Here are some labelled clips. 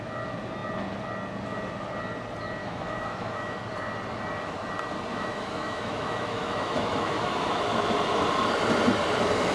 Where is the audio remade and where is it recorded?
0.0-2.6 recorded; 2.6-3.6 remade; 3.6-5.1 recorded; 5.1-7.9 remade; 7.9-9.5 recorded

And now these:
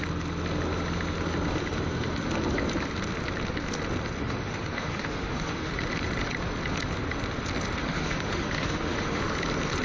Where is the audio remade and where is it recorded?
0.0-4.2 recorded; 4.2-5.7 remade; 5.7-7.8 recorded; 7.8-9.2 remade; 9.2-9.8 recorded

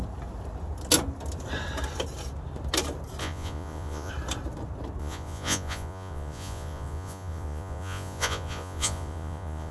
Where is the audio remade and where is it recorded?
0.0-3.2 recorded; 3.2-4.1 remade; 4.1-5.0 recorded; 5.0-9.7 remade

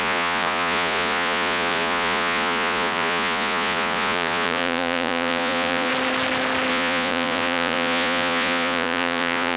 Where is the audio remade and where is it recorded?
0.0-5.9 remade; 5.9-6.7 recorded; 6.7-9.6 remade

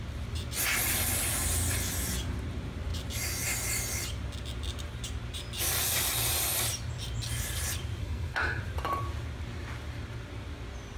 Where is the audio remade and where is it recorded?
0.0-8.0 recorded; 8.0-8.6 remade; 8.6-11.0 recorded

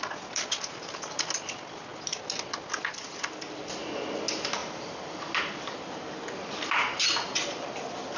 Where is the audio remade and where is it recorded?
0.0-8.2 recorded